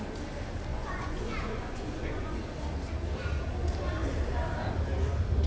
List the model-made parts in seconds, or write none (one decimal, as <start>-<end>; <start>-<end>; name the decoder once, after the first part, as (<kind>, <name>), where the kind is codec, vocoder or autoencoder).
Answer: 0.7-2.4 (vocoder, Vocos)